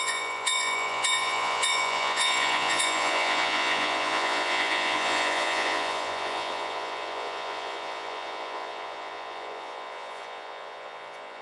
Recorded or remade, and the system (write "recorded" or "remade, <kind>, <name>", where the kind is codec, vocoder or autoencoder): remade, vocoder, Vocos